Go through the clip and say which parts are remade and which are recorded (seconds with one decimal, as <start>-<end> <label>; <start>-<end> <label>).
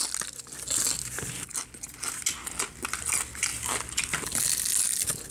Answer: 0.0-5.3 recorded